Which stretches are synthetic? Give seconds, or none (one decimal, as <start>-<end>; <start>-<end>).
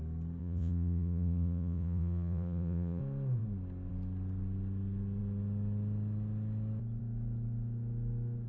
0.4-3.0